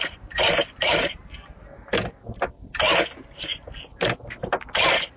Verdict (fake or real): real